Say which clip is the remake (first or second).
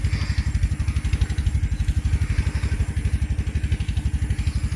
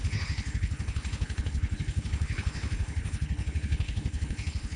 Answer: second